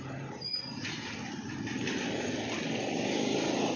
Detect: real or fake real